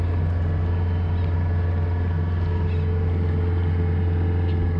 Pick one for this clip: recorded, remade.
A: recorded